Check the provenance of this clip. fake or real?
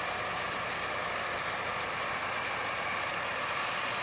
real